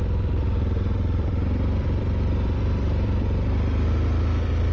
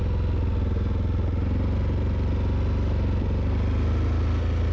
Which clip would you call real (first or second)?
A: second